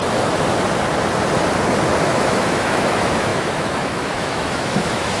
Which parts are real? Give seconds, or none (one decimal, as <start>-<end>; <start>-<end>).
0.0-2.1